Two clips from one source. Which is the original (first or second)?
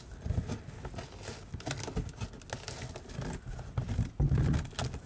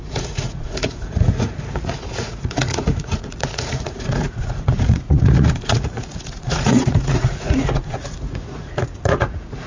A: first